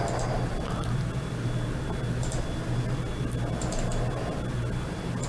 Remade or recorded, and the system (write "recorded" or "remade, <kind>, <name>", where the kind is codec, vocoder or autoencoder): recorded